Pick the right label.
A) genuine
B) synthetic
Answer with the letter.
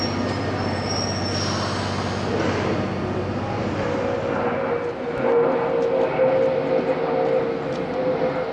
A